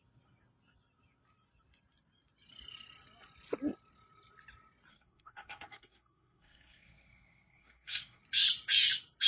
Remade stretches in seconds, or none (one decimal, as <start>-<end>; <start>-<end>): 4.9-8.2